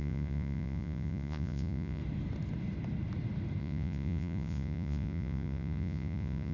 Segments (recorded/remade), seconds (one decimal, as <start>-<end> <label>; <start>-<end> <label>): 0.0-2.0 remade; 2.0-3.6 recorded; 3.6-6.5 remade